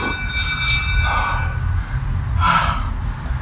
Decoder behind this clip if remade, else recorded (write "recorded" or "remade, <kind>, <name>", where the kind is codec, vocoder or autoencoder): recorded